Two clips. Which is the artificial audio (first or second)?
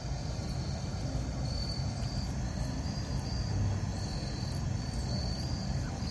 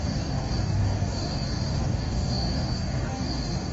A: second